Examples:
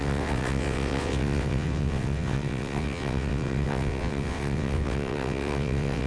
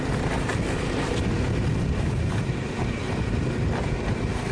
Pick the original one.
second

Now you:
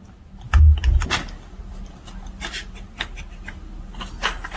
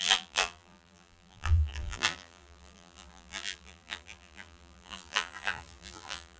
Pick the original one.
first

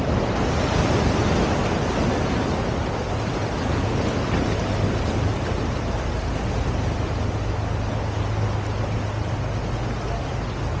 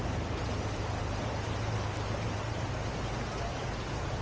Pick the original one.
first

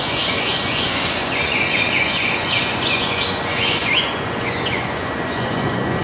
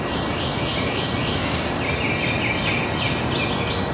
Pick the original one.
second